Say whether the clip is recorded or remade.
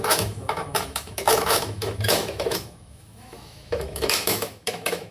remade